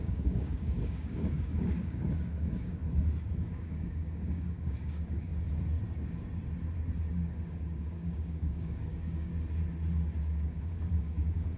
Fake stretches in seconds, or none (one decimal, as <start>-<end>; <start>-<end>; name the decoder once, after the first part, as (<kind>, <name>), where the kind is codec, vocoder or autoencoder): 0.0-2.8 (codec, DAC); 3.3-5.3; 7.1-9.3; 10.2-11.6